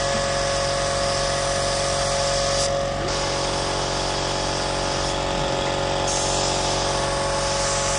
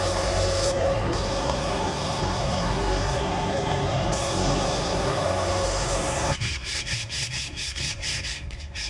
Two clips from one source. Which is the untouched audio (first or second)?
first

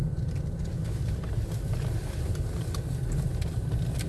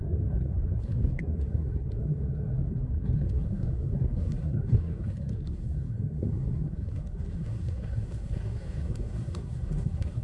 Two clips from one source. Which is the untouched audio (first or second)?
first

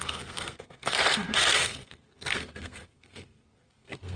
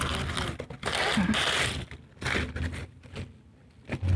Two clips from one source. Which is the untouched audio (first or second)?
second